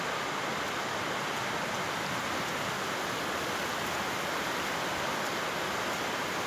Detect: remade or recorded recorded